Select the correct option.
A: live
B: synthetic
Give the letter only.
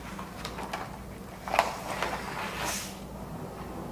A